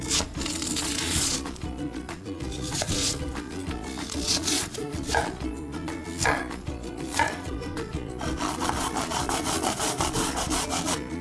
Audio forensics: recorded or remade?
remade